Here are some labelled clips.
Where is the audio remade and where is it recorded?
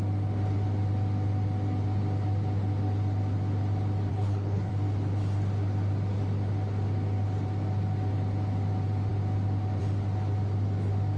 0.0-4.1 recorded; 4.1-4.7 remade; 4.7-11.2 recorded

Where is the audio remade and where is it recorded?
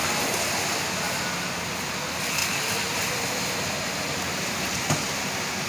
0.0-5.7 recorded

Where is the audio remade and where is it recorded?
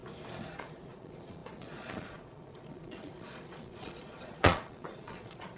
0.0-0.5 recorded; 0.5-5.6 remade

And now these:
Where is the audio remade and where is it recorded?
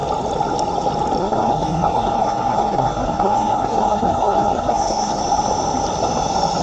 0.0-1.2 recorded; 1.2-5.2 remade; 5.2-6.6 recorded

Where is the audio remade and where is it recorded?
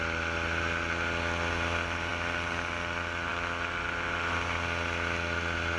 0.0-5.8 recorded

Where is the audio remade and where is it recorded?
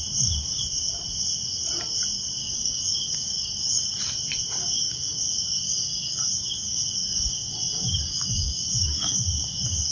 0.0-2.4 recorded; 2.4-4.0 remade; 4.0-4.6 recorded; 4.6-9.9 remade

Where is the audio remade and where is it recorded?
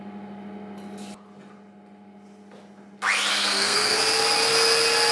0.0-3.3 recorded; 3.3-4.0 remade; 4.0-5.1 recorded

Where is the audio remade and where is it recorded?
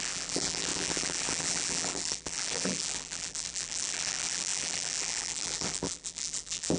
0.0-6.8 remade